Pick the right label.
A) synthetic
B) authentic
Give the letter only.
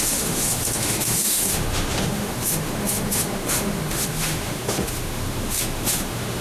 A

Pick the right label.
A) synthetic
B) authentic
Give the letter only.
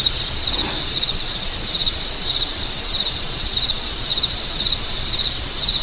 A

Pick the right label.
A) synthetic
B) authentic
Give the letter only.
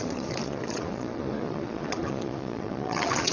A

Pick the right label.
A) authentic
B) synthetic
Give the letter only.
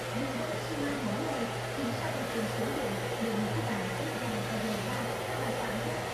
A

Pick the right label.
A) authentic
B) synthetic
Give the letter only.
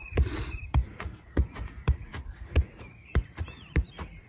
B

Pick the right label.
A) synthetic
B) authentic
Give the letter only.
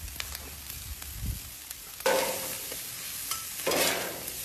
B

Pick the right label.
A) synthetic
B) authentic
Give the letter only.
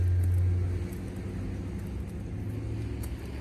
B